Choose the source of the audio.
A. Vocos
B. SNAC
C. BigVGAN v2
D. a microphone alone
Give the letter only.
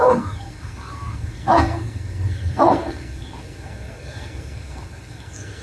B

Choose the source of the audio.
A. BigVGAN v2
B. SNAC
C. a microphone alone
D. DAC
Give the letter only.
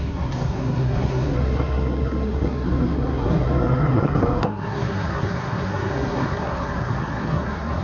B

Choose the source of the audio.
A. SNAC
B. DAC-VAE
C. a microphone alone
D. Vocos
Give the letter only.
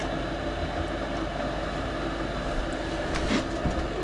C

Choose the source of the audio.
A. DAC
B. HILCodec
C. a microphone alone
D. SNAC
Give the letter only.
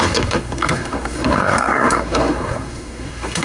D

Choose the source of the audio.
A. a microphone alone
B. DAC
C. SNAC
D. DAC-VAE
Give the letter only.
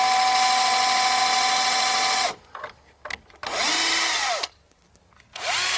A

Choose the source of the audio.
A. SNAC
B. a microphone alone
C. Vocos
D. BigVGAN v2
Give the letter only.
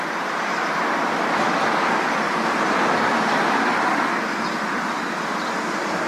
B